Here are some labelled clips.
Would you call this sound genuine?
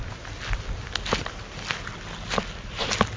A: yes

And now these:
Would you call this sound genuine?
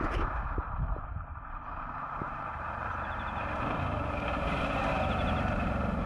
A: no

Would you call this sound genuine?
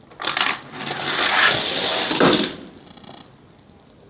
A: yes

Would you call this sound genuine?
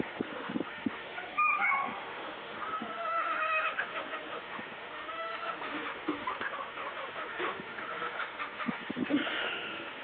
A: no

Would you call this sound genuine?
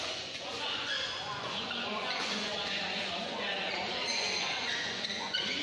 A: no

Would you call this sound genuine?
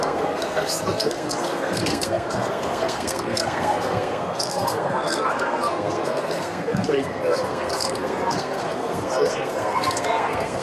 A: no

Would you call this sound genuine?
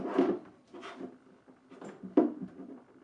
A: yes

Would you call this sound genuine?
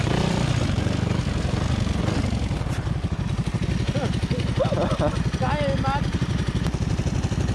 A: yes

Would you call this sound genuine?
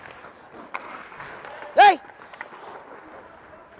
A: yes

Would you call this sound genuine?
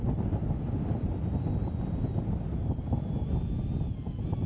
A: yes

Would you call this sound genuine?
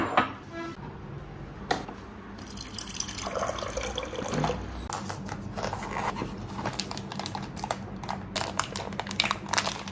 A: yes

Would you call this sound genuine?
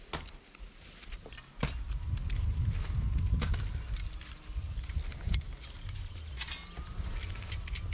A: yes